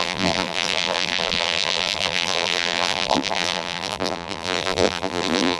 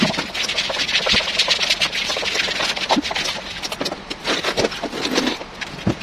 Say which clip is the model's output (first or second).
first